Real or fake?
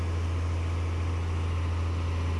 real